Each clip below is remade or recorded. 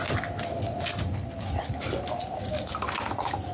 recorded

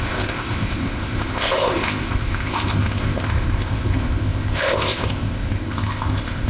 remade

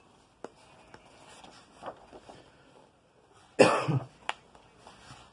recorded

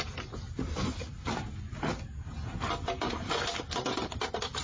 recorded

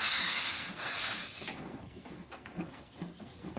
remade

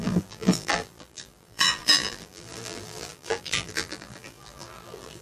remade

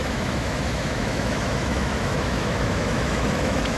remade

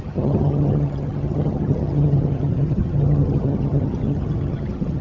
remade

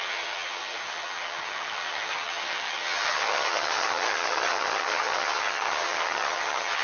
remade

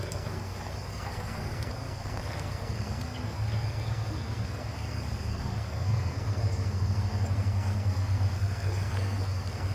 remade